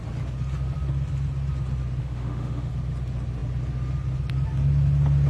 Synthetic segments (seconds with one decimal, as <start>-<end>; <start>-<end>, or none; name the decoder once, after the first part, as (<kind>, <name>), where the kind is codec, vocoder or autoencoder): 2.0-2.7 (autoencoder, DAC-VAE)

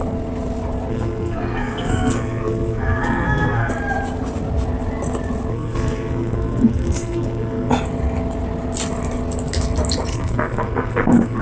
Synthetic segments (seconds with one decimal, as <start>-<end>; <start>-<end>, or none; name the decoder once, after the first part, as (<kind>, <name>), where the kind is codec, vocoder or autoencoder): 0.9-3.7 (codec, SNAC); 5.5-7.7; 10.1-11.4

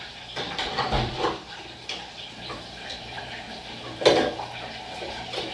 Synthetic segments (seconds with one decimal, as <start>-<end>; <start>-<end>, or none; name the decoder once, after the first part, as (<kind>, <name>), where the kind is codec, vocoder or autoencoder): 0.7-3.2 (vocoder, BigVGAN v2)

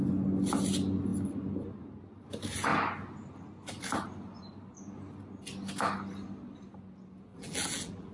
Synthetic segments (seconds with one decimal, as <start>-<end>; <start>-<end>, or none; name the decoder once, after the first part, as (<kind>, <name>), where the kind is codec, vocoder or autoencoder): 7.3-8.1 (vocoder, BigVGAN v2)